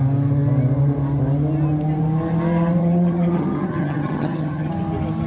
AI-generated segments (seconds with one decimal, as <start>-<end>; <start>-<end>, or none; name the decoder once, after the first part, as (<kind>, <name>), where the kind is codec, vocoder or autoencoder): 2.8-4.7 (vocoder, HiFi-GAN)